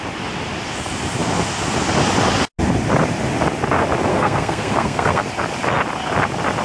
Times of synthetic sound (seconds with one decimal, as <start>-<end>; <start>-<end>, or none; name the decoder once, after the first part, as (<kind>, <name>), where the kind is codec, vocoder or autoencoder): 4.1-5.2 (codec, SNAC)